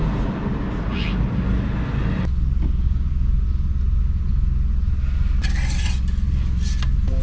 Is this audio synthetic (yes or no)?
no